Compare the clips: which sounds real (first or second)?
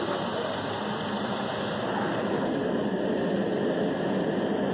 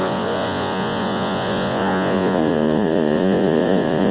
first